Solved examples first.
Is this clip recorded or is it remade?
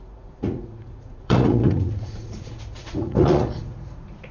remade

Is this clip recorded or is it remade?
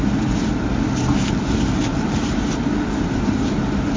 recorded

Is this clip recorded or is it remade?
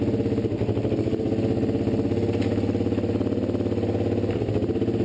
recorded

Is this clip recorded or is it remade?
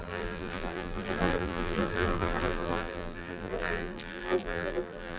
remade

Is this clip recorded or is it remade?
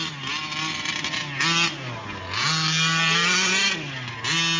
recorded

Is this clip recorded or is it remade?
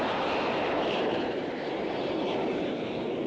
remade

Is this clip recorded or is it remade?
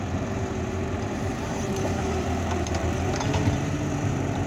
remade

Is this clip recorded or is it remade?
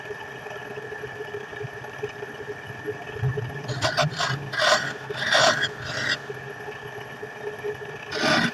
recorded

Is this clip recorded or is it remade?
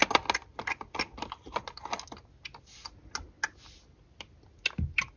recorded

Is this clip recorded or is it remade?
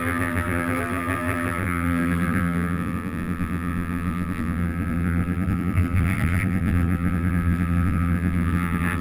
remade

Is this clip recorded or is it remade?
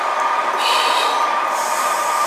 recorded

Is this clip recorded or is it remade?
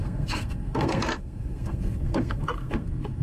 remade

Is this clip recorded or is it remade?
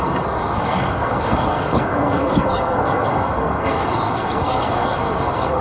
remade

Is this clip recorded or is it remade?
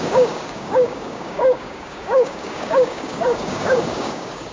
remade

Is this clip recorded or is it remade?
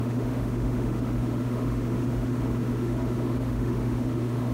remade